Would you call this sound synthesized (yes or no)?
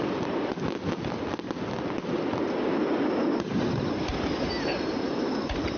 no